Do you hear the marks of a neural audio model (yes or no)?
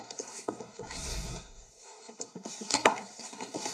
yes